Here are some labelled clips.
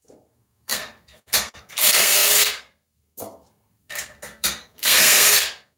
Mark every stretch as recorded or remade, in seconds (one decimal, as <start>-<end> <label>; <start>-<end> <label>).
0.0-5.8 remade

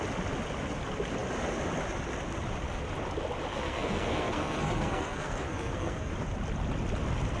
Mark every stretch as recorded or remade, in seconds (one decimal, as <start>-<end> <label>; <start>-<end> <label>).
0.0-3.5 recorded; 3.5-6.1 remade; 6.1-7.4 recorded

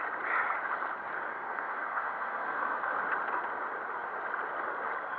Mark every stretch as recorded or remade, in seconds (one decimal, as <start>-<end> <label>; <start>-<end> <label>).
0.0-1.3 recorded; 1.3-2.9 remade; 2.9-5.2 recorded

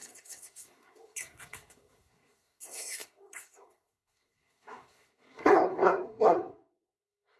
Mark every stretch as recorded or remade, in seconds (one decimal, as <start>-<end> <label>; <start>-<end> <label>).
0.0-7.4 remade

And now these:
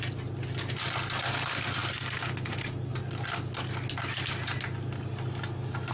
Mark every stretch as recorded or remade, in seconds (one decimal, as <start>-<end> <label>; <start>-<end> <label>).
0.0-5.9 recorded

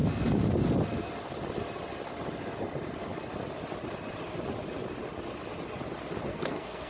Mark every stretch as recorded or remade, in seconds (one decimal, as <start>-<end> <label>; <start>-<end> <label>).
0.0-6.3 recorded; 6.3-6.9 remade

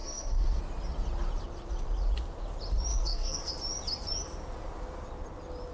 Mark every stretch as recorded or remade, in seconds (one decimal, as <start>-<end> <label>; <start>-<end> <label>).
0.0-0.6 remade; 0.6-2.9 recorded; 2.9-3.5 remade; 3.5-5.7 recorded